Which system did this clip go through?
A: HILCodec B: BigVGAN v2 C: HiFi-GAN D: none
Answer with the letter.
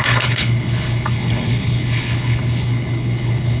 A